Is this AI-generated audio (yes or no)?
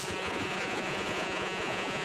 yes